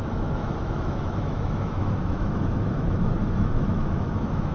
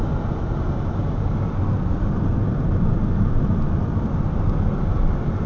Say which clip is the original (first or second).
second